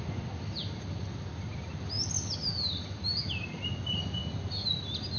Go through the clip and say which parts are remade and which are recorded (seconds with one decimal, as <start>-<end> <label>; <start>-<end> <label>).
0.0-5.2 recorded